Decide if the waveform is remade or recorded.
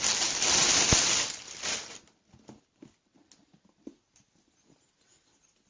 recorded